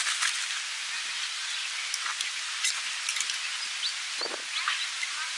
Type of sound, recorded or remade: recorded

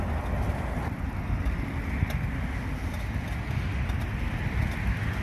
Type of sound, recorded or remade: recorded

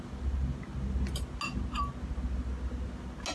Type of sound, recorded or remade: recorded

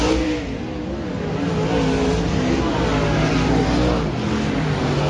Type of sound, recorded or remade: recorded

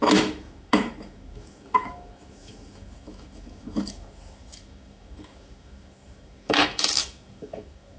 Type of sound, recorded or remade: remade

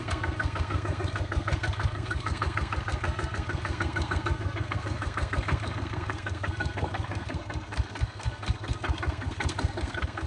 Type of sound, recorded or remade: remade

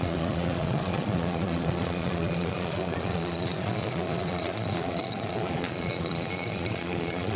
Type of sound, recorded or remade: remade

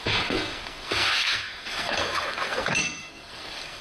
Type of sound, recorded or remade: remade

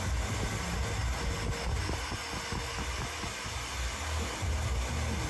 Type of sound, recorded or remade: recorded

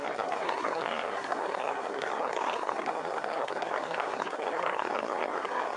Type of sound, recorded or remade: remade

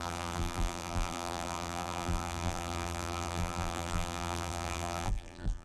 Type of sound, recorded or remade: remade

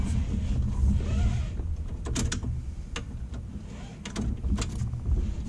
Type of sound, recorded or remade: recorded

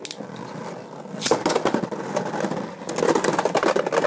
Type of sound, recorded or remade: recorded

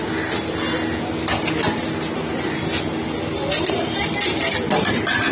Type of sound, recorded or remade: recorded